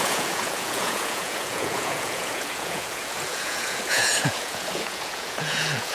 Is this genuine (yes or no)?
no